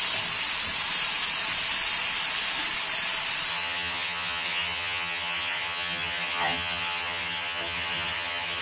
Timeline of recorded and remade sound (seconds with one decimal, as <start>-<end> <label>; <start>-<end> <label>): 0.0-3.5 recorded; 3.5-8.6 remade